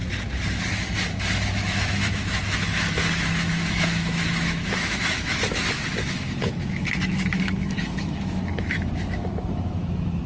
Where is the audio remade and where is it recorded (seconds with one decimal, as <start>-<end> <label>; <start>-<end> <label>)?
0.0-1.1 recorded; 1.1-10.3 remade